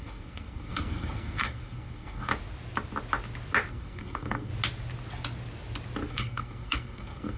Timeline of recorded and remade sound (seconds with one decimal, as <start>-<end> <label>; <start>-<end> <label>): 0.0-2.3 remade; 2.3-3.7 recorded; 3.7-4.5 remade; 4.5-6.1 recorded; 6.1-7.4 remade